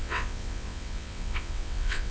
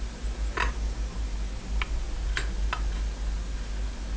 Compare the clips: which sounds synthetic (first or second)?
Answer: first